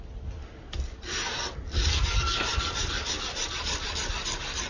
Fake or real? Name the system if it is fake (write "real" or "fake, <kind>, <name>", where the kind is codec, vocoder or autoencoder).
real